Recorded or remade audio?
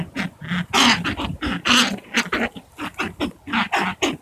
recorded